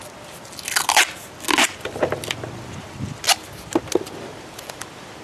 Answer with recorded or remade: recorded